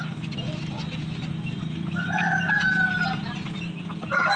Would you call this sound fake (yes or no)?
no